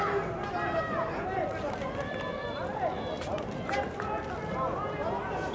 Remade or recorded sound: recorded